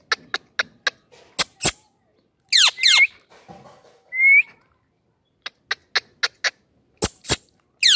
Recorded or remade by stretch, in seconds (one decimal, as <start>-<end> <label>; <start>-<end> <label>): 0.0-8.0 recorded